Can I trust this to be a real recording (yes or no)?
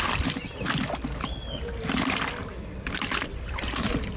yes